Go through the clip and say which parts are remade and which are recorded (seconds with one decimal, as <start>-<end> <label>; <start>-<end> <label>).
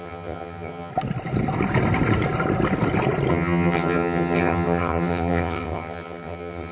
0.0-0.9 remade; 0.9-3.3 recorded; 3.3-6.7 remade